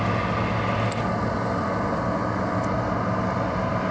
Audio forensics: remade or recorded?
recorded